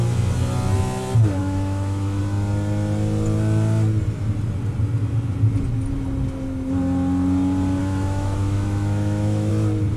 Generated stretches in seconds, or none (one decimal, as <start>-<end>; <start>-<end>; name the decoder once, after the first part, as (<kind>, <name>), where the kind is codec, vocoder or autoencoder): 1.4-2.2 (autoencoder, DAC-VAE); 7.8-9.5